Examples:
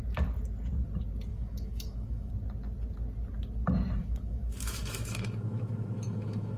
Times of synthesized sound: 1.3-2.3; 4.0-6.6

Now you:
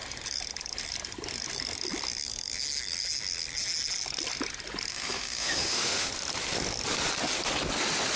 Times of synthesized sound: 4.9-6.1

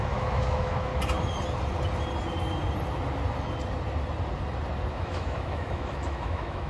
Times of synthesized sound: 0.0-0.9; 4.9-6.7

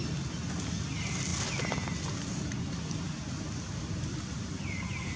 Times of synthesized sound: none

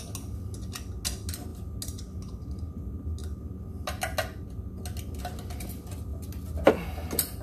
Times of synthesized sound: none

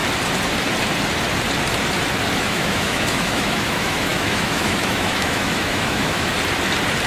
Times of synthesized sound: 2.4-6.3

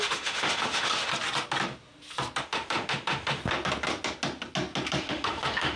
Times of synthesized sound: 0.0-1.1; 2.4-3.4; 5.0-5.8